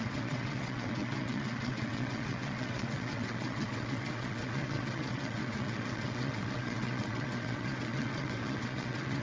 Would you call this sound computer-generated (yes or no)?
yes